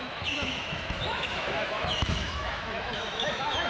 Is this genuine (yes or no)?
no